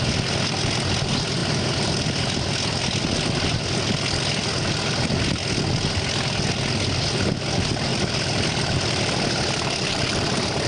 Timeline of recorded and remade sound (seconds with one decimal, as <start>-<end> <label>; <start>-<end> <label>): 0.0-7.9 recorded; 7.9-10.7 remade